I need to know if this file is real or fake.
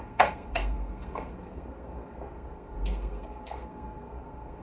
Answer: fake